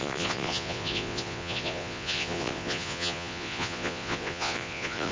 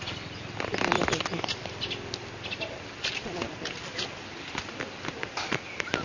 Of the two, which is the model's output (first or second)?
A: first